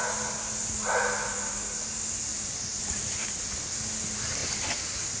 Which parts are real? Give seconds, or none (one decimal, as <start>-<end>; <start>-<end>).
0.0-5.2